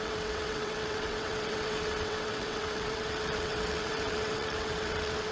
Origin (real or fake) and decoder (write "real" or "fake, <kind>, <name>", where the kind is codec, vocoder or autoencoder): fake, vocoder, WaveNeXt